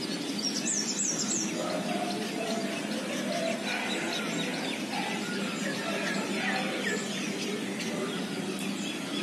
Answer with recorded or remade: recorded